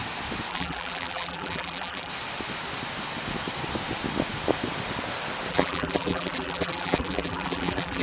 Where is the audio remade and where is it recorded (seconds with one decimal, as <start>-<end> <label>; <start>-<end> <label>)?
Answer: 0.0-0.5 recorded; 0.5-2.1 remade; 2.1-5.5 recorded; 5.5-8.0 remade